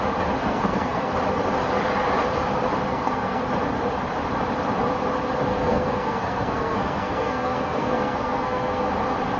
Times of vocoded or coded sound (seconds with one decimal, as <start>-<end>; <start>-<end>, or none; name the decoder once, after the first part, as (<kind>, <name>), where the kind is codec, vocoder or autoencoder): 0.4-1.1 (codec, SNAC); 2.9-3.4; 5.5-8.9